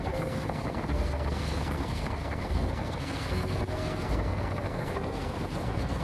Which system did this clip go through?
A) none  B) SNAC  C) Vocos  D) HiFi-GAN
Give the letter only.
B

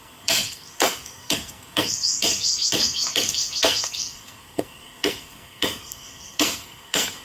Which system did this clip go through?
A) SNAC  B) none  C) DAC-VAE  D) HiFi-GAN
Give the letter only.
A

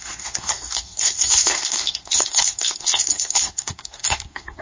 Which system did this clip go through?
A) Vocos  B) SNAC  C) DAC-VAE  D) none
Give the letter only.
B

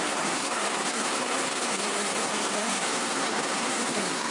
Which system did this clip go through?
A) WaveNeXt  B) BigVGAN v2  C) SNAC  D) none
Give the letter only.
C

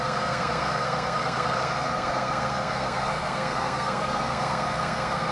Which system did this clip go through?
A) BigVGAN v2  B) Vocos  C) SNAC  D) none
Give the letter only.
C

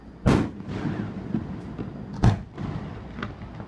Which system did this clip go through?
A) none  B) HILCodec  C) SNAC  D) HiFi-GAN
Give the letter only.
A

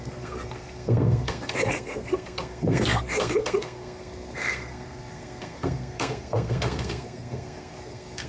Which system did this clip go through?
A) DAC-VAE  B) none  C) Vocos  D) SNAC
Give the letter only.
D